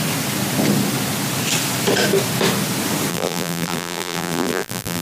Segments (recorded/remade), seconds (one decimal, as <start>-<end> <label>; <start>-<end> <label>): 0.0-3.1 recorded; 3.1-5.0 remade